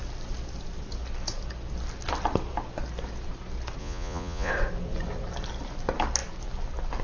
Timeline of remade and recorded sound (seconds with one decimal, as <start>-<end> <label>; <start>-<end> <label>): 0.0-3.8 recorded; 3.8-4.5 remade; 4.5-7.0 recorded